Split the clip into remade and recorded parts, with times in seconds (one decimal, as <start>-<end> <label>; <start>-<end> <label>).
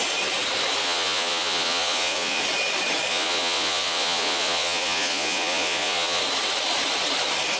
0.0-0.8 recorded; 0.8-2.4 remade; 2.4-3.1 recorded; 3.1-6.2 remade; 6.2-7.6 recorded